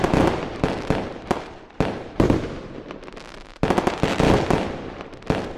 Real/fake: real